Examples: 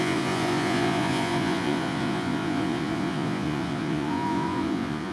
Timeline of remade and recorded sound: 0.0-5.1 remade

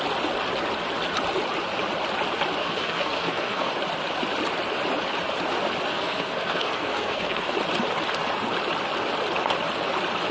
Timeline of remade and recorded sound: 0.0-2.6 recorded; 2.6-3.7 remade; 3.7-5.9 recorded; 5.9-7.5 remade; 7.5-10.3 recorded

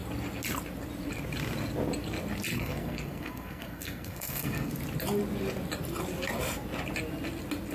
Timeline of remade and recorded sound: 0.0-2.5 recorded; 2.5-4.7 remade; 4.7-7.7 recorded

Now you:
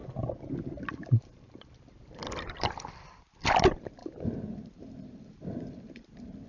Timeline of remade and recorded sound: 0.0-2.4 recorded; 2.4-6.5 remade

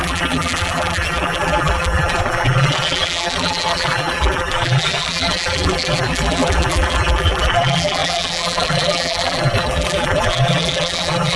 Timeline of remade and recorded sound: 0.0-11.4 remade

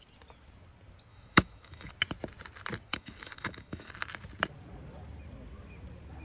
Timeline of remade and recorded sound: 0.0-1.1 recorded; 1.1-1.9 remade; 1.9-2.9 recorded; 2.9-3.9 remade; 3.9-6.2 recorded